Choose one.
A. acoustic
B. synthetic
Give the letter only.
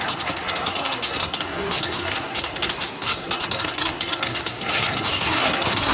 B